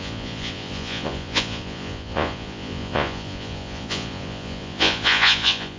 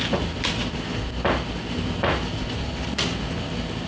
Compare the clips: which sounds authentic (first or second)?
second